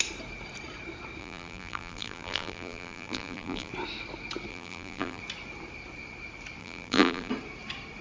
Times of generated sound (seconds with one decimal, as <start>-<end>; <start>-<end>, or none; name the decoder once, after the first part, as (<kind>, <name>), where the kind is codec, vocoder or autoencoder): 1.2-3.7 (vocoder, BigVGAN v2); 4.5-5.2; 6.6-7.3